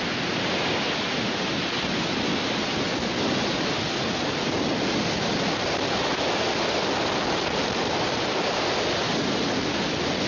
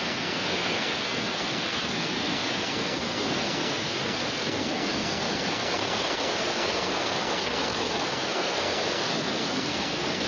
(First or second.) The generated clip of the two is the second